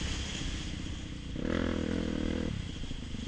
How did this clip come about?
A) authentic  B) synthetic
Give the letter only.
A